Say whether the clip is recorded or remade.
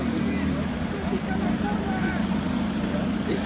recorded